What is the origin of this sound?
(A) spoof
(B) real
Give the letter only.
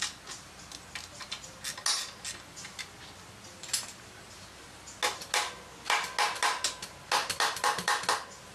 B